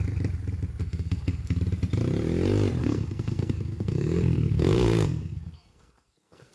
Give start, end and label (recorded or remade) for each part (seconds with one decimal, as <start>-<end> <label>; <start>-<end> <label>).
0.0-0.8 recorded; 0.8-1.6 remade; 1.6-2.8 recorded; 2.8-6.5 remade